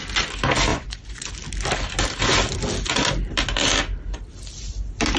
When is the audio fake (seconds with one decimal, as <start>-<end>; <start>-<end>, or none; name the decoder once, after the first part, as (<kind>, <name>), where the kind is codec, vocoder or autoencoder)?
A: 0.7-1.3 (vocoder, Vocos)